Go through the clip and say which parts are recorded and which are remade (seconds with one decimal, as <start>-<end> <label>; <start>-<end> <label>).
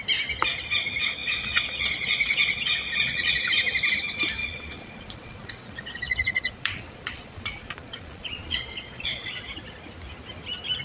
0.0-1.2 recorded; 1.2-3.5 remade; 3.5-4.4 recorded; 4.4-9.4 remade; 9.4-10.8 recorded